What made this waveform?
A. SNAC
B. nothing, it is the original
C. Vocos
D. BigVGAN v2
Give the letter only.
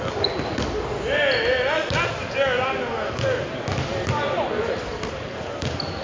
B